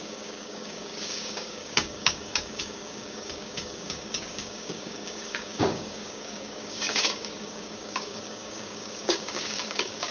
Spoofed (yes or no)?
yes